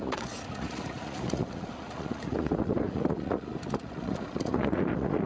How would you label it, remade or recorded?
remade